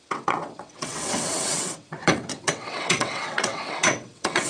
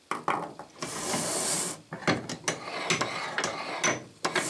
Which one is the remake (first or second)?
first